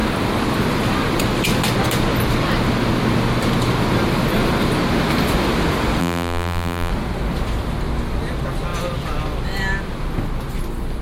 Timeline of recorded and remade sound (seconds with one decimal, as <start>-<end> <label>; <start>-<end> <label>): 0.0-6.0 recorded; 6.0-6.9 remade; 6.9-11.0 recorded